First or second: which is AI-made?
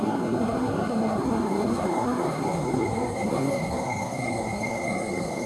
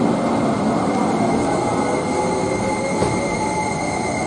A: first